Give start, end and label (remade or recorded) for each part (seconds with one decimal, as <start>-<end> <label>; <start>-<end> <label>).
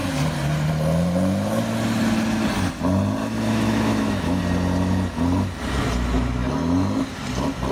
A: 0.0-3.2 recorded; 3.2-4.4 remade; 4.4-7.7 recorded